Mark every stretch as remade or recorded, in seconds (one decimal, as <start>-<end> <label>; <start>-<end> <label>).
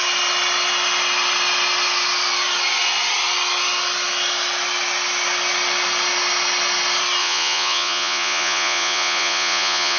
0.0-7.2 recorded; 7.2-10.0 remade